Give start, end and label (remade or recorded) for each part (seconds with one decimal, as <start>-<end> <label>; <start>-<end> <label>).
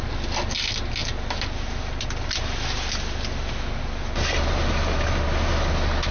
0.0-6.1 recorded